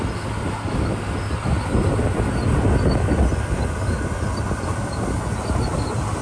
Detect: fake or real real